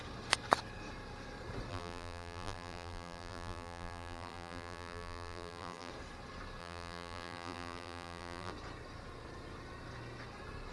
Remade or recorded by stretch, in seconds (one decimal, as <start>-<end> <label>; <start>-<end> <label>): 0.0-1.7 recorded; 1.7-5.9 remade; 5.9-6.6 recorded; 6.6-8.5 remade; 8.5-10.7 recorded